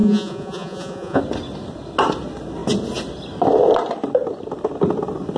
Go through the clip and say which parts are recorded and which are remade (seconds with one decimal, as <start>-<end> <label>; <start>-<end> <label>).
0.0-1.2 remade; 1.2-5.4 recorded